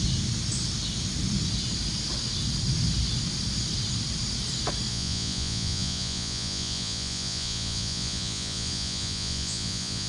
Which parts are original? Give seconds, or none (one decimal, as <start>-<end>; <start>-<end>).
0.0-4.9